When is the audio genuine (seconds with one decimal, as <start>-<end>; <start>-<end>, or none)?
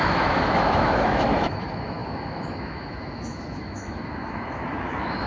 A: none